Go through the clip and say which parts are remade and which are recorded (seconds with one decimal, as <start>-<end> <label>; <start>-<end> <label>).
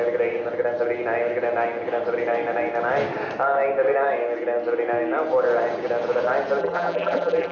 0.0-6.6 recorded; 6.6-7.5 remade